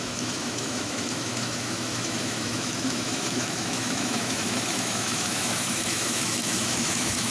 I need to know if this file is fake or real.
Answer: fake